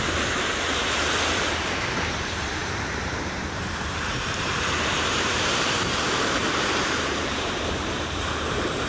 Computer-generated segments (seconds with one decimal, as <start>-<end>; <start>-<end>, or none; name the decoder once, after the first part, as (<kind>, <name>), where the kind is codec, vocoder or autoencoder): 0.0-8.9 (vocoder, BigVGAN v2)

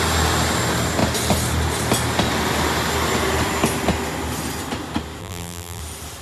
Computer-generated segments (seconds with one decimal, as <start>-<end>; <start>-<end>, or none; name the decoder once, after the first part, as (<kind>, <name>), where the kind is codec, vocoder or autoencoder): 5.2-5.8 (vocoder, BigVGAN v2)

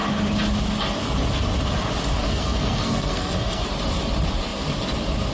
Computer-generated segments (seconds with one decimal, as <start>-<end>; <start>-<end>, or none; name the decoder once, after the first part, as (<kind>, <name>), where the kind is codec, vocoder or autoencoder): 2.2-3.6 (codec, SNAC)